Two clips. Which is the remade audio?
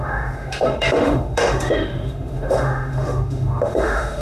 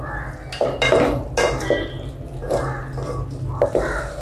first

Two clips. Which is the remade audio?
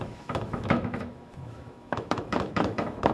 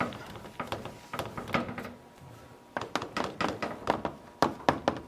first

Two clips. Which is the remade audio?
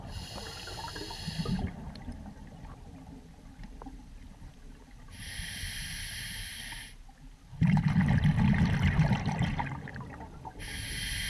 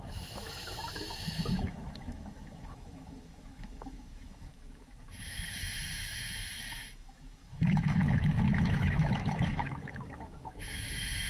second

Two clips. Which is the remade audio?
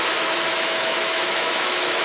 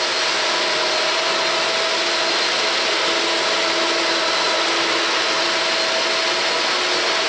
first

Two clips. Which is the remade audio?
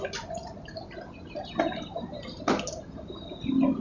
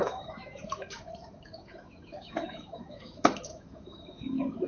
second